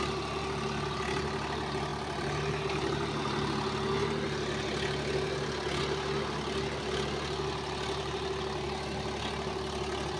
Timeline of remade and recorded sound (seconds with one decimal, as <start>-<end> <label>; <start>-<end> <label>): 0.0-10.2 recorded